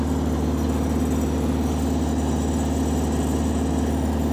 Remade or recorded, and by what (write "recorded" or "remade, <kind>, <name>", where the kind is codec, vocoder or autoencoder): recorded